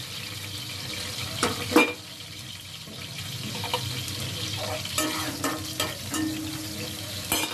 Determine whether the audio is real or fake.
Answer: real